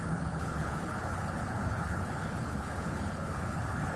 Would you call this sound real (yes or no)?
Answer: no